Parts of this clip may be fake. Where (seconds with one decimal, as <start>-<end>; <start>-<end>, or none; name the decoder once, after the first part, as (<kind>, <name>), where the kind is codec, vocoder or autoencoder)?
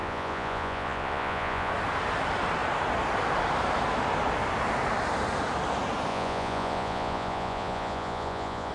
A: 0.0-1.7 (vocoder, Vocos); 6.1-8.7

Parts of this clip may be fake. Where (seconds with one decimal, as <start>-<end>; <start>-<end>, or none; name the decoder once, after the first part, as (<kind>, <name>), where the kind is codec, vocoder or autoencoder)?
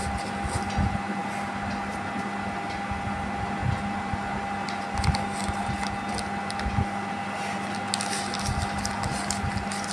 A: none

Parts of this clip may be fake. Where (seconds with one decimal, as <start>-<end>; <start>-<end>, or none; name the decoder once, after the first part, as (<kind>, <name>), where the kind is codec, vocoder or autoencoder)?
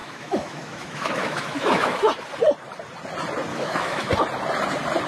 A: 0.0-2.0 (autoencoder, DAC-VAE); 3.5-4.1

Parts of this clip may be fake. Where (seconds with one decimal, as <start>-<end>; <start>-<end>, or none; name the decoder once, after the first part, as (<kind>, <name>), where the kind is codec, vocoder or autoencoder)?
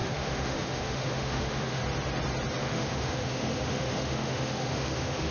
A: 0.0-1.8 (autoencoder, DAC-VAE); 2.6-5.3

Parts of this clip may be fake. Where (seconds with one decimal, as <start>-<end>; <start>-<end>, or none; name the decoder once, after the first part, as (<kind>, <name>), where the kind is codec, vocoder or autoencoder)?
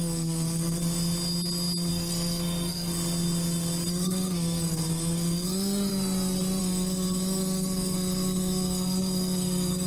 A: 0.0-0.8 (codec, SNAC); 1.9-2.9; 3.9-5.9; 6.6-9.9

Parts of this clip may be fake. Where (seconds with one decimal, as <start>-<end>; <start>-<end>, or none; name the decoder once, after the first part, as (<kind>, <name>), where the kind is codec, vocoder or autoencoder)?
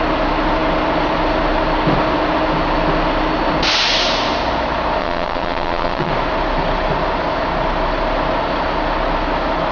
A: 5.0-6.1 (vocoder, WaveNeXt)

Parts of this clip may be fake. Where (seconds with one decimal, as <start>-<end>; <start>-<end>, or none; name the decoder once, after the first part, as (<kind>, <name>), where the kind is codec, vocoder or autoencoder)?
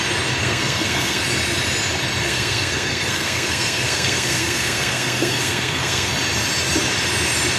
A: 0.4-1.2 (codec, SNAC); 2.2-6.1